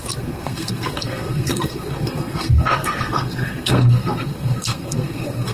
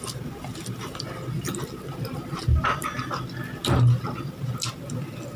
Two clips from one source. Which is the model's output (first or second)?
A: first